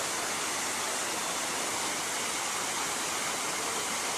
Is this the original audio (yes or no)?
yes